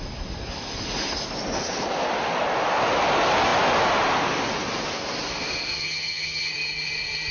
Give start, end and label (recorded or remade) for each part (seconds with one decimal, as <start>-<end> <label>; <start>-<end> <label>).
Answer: 0.0-5.7 recorded; 5.7-6.5 remade; 6.5-7.3 recorded